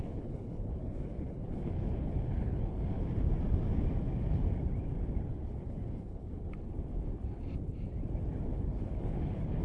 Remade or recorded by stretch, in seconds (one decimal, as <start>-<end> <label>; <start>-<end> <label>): 0.0-3.0 remade; 3.0-5.3 recorded; 5.3-6.5 remade; 6.5-8.5 recorded; 8.5-9.6 remade